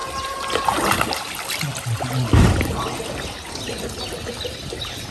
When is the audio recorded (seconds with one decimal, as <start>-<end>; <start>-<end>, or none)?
0.0-5.1